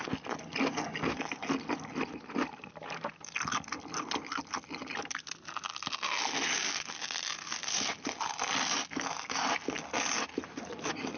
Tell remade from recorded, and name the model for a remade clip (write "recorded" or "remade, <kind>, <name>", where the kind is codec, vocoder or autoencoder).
recorded